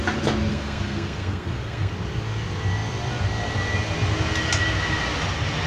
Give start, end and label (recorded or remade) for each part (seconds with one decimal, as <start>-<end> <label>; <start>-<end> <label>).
0.0-0.5 recorded; 0.5-1.9 remade; 1.9-5.7 recorded